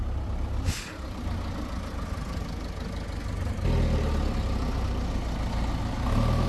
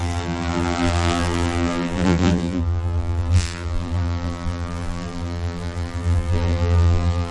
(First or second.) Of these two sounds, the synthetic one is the second